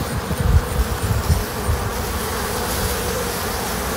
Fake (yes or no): no